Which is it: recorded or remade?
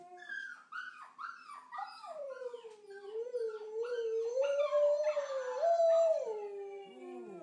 recorded